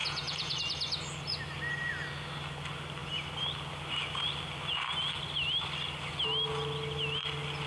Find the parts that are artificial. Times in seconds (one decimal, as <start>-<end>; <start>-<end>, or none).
0.0-0.6